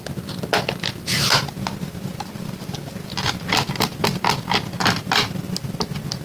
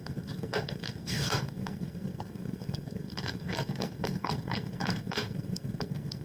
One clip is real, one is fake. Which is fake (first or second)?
second